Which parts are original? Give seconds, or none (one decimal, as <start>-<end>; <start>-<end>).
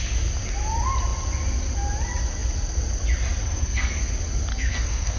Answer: 0.0-3.4; 4.0-4.5